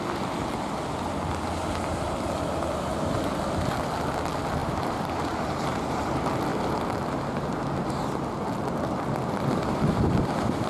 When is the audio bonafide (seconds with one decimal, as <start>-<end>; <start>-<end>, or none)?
0.0-4.6; 6.0-10.7

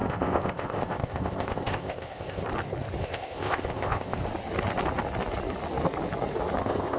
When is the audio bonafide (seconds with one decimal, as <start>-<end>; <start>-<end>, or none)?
2.4-3.0; 4.2-6.6

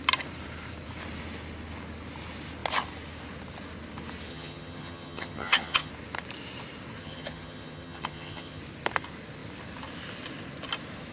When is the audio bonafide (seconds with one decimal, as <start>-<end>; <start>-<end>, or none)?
0.0-4.3; 5.9-7.0; 8.6-11.1

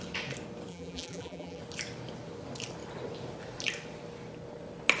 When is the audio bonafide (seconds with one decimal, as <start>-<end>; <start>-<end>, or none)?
0.0-0.7; 1.6-5.0

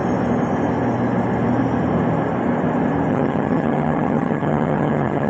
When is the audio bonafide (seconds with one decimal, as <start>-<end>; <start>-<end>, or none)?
0.0-3.1

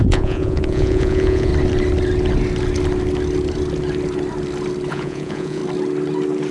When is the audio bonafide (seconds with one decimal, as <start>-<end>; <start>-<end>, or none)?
1.5-4.9; 5.6-6.5